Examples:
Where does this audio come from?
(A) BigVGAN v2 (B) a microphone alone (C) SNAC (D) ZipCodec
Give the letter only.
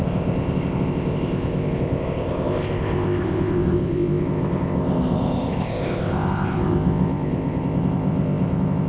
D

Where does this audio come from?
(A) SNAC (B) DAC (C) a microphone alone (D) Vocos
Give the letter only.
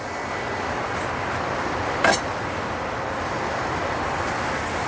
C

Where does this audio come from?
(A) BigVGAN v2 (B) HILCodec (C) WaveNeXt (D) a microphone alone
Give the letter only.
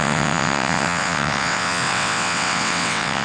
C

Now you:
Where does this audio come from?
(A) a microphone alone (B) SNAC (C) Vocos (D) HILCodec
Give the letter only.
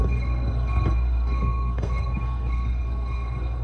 B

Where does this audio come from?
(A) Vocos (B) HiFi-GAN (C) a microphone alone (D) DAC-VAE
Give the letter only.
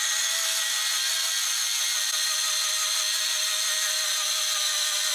C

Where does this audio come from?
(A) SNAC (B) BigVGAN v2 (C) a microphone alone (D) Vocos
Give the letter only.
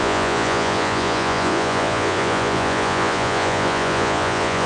D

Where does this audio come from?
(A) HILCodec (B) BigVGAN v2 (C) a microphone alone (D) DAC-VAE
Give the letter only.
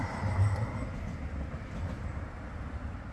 C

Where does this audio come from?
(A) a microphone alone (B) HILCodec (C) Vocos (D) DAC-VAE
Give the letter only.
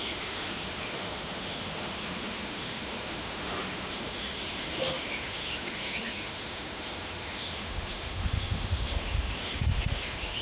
D